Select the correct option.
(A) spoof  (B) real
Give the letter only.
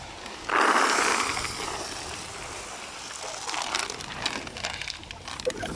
A